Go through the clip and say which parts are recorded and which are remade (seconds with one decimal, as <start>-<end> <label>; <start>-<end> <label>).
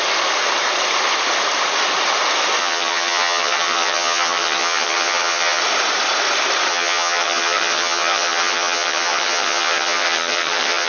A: 0.0-2.6 recorded; 2.6-5.6 remade; 5.6-6.7 recorded; 6.7-10.9 remade